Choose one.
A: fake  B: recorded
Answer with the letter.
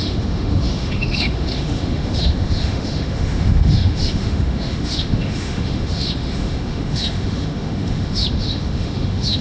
A